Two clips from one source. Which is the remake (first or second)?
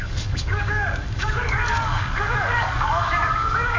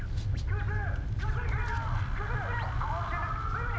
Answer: first